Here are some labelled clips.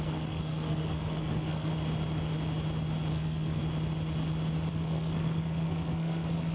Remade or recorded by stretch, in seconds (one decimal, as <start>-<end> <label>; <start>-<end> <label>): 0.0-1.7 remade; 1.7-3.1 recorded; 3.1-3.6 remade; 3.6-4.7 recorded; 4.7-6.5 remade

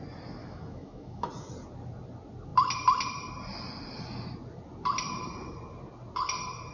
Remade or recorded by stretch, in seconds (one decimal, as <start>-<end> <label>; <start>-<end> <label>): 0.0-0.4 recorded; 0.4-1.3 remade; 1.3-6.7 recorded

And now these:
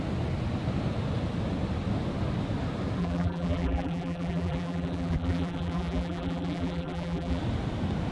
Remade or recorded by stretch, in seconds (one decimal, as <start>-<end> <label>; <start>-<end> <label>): 0.0-3.0 recorded; 3.0-7.4 remade; 7.4-8.1 recorded

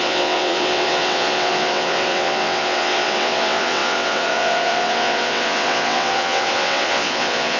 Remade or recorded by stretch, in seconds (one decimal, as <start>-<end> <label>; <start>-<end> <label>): 0.0-7.6 remade